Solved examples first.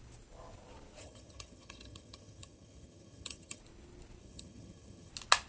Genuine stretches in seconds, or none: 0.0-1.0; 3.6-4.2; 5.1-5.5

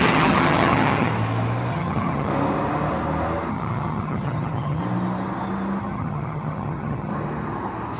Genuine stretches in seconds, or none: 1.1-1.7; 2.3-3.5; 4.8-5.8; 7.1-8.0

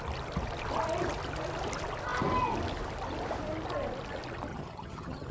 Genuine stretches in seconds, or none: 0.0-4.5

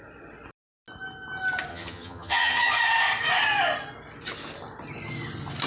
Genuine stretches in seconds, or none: 0.0-1.7; 2.7-5.7

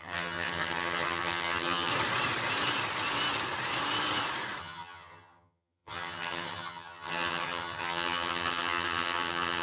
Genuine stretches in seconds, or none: 1.9-4.6

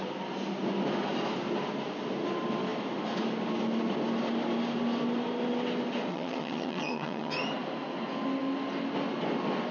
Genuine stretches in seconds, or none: 0.0-6.1; 7.3-9.7

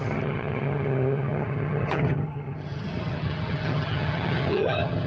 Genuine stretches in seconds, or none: none

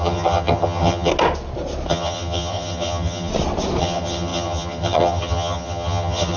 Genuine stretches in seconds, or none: 1.1-1.9; 3.3-3.8